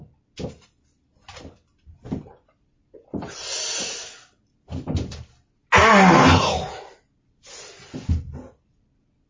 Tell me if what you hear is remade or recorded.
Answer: recorded